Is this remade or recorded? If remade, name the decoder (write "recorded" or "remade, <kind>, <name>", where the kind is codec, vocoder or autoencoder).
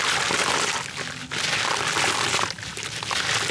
recorded